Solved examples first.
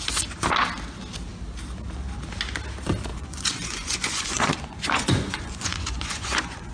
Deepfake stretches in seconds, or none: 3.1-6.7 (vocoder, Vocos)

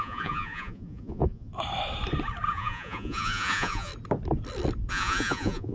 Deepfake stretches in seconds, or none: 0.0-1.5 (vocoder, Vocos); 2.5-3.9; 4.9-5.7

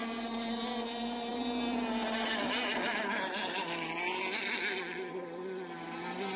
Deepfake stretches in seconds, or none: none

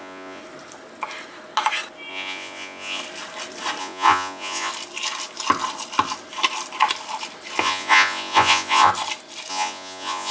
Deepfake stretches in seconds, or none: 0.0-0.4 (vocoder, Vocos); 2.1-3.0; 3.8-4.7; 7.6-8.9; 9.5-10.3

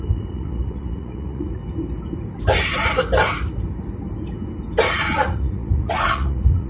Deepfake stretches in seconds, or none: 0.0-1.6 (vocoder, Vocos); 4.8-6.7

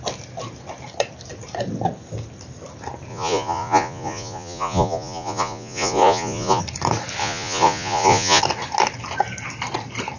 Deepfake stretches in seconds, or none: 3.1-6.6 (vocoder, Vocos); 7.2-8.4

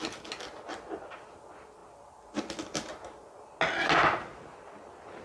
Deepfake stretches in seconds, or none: none